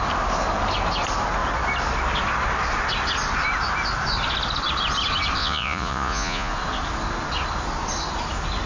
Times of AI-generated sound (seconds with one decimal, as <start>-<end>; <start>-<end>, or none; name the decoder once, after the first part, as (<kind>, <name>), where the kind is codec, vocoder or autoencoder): 5.4-6.5 (vocoder, Vocos)